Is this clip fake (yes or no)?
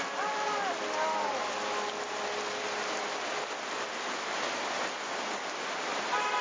no